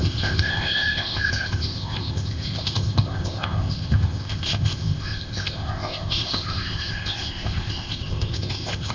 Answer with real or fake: fake